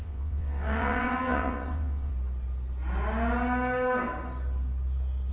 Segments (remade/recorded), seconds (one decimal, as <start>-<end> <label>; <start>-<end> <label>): 0.0-2.1 remade; 2.1-5.3 recorded